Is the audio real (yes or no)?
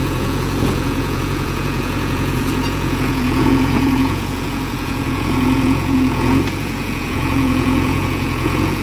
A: no